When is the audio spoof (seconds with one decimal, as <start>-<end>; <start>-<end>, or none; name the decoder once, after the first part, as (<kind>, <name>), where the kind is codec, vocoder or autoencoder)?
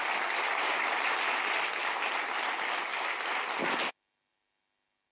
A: none